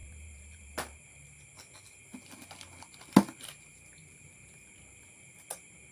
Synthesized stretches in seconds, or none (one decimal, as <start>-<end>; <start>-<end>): 0.0-1.4; 4.0-4.5